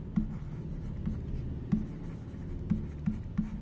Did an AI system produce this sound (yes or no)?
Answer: no